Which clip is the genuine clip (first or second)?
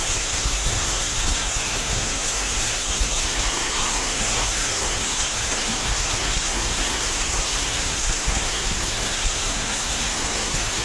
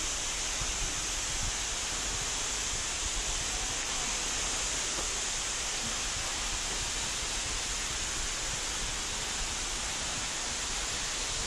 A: second